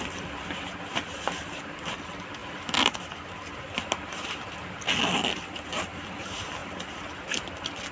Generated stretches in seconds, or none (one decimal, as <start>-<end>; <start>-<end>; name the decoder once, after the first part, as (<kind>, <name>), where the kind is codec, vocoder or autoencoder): none